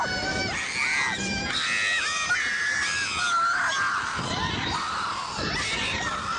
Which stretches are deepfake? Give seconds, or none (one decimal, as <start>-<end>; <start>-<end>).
none